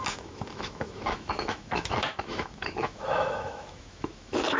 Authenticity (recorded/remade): remade